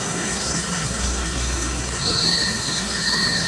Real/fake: fake